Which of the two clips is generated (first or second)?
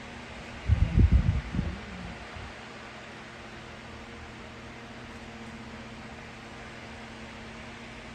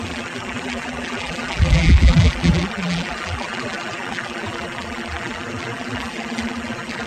second